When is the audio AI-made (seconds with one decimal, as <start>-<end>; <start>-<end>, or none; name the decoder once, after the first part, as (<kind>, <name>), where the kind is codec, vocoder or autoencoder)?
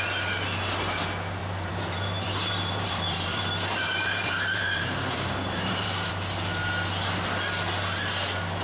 1.4-6.1 (vocoder, BigVGAN v2)